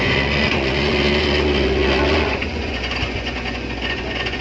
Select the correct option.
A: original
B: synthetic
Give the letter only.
B